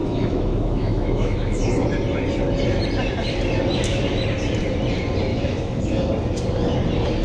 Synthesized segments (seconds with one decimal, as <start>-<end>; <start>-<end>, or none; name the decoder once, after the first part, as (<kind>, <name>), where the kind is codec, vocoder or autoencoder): 0.0-1.6 (autoencoder, DAC-VAE); 5.3-5.8